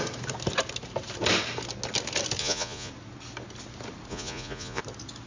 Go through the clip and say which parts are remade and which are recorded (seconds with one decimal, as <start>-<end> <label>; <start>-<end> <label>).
0.0-2.4 recorded; 2.4-2.9 remade; 2.9-4.1 recorded; 4.1-4.8 remade; 4.8-5.3 recorded